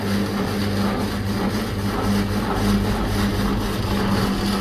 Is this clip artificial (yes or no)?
no